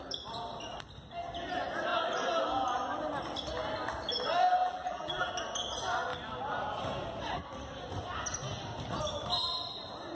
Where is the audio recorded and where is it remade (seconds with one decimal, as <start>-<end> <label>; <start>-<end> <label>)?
0.0-4.6 recorded; 4.6-5.3 remade; 5.3-10.1 recorded